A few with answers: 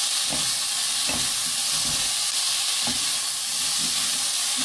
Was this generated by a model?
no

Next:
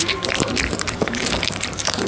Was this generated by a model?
yes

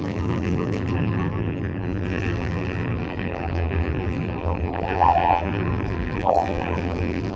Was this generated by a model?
yes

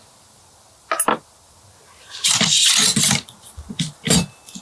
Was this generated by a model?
no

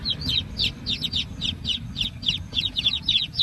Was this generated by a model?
no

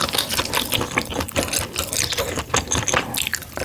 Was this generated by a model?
no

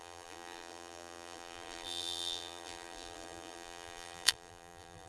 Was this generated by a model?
yes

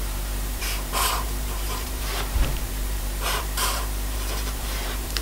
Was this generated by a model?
yes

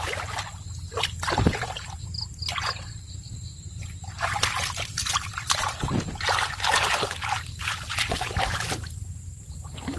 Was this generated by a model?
no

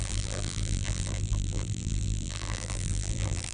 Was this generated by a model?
yes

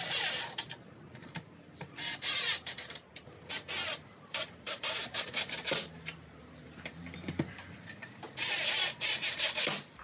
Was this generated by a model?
yes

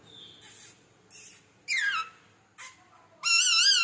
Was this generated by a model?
no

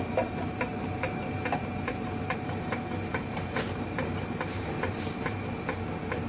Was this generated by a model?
yes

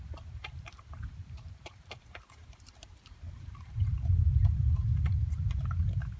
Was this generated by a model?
yes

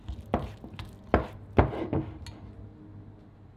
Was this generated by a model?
no